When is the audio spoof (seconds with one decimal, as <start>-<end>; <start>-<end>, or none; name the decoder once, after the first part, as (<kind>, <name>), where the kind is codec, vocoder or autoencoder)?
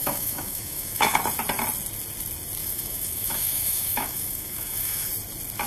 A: 0.0-1.2 (autoencoder, DAC-VAE); 2.6-5.1